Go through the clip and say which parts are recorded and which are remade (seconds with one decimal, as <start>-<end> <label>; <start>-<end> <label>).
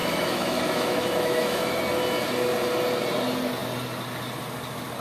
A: 0.0-1.8 remade; 1.8-5.0 recorded